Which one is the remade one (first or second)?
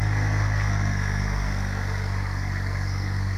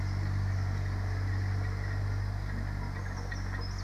first